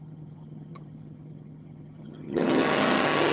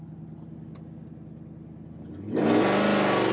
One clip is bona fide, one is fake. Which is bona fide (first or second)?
second